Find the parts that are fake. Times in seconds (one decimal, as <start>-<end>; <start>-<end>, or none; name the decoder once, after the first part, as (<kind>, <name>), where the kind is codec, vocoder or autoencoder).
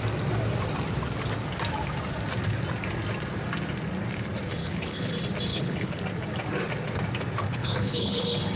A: 4.6-5.1 (codec, HILCodec); 5.5-6.0; 7.4-8.2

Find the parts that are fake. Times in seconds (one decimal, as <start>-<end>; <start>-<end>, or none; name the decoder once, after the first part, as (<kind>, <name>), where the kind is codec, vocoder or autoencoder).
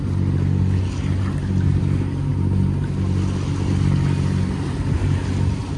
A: none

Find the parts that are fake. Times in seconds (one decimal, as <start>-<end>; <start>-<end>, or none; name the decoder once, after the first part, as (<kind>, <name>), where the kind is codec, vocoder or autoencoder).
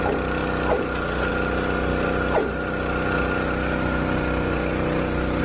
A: none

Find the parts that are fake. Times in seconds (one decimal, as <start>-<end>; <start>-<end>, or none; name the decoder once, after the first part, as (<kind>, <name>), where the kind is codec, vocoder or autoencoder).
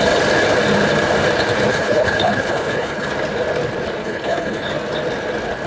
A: 1.7-3.1 (codec, HILCodec); 4.0-4.7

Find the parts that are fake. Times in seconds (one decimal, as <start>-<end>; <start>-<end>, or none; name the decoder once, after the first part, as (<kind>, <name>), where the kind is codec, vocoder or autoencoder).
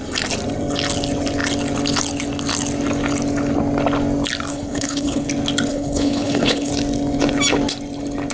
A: 4.5-5.3 (codec, HILCodec); 5.7-6.7